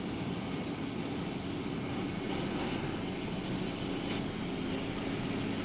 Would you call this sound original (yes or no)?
yes